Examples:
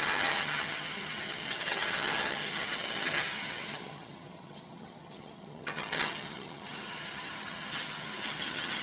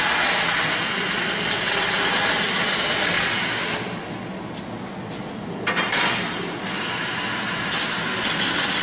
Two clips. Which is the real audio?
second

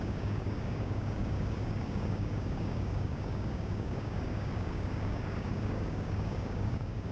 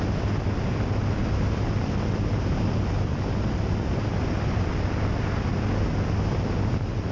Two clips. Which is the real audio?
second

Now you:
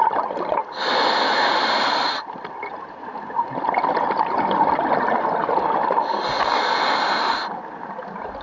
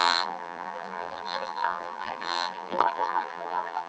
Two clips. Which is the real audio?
first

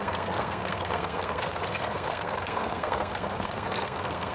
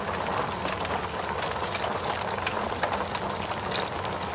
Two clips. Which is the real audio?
second